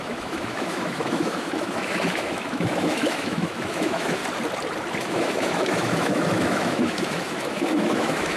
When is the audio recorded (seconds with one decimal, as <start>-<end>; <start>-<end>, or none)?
4.2-5.0